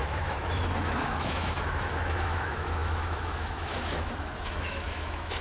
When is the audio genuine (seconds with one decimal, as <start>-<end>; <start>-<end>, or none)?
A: none